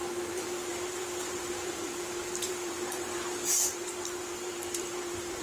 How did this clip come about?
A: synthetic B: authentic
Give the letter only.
A